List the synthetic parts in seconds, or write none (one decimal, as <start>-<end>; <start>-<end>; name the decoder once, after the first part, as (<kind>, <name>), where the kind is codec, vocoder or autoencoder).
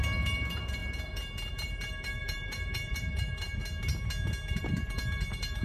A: 0.0-3.6 (vocoder, BigVGAN v2); 4.6-5.6